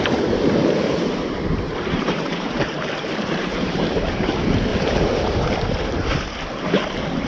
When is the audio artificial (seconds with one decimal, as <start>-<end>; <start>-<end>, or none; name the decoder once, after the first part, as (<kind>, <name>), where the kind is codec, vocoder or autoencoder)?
0.6-4.3 (vocoder, BigVGAN v2); 4.7-6.0